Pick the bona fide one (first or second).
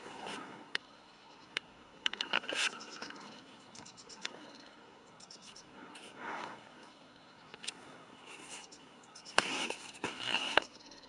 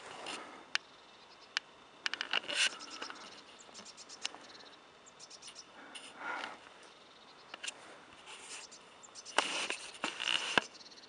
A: second